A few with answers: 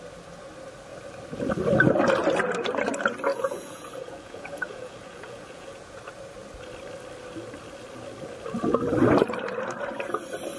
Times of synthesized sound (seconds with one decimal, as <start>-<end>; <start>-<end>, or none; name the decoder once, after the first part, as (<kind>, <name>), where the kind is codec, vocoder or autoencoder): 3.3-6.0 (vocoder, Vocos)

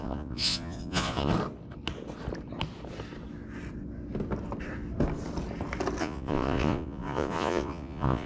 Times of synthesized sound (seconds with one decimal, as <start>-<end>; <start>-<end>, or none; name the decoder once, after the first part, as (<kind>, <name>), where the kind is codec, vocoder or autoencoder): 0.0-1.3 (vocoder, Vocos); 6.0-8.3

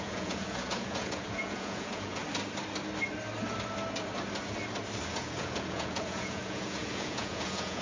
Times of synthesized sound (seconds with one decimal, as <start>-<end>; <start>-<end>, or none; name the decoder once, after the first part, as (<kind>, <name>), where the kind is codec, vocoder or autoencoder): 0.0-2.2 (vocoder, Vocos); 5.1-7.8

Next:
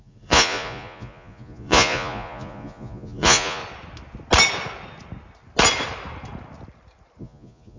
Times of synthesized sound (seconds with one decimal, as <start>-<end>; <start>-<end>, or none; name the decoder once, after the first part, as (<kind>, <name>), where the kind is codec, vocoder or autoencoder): 0.0-3.6 (vocoder, Vocos); 7.2-7.8

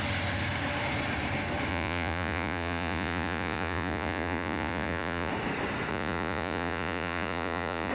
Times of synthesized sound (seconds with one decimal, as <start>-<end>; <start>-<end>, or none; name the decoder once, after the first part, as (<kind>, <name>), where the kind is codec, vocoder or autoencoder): 1.7-5.3 (vocoder, Vocos); 5.9-7.9

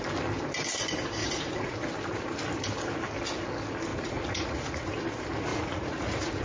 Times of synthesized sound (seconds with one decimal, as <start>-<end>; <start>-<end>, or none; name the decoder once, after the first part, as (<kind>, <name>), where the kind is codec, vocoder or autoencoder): 1.2-1.8 (vocoder, Vocos); 3.9-4.9; 5.5-6.4

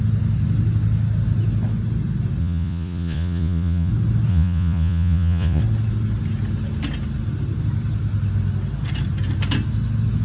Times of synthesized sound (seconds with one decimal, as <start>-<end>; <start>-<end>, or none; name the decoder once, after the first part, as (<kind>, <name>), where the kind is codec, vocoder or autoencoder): 2.4-3.9 (vocoder, Vocos); 4.3-5.6